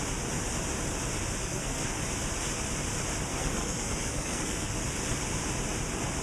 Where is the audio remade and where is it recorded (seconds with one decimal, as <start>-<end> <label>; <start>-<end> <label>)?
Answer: 0.0-1.4 recorded; 1.4-2.0 remade; 2.0-3.3 recorded; 3.3-4.7 remade; 4.7-6.2 recorded